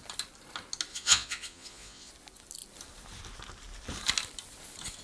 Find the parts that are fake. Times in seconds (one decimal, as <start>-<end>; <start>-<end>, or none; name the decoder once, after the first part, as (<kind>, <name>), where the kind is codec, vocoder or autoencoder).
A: 0.9-2.1 (vocoder, Vocos)